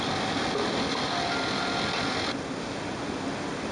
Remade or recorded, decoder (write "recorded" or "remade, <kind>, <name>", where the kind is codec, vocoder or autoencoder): recorded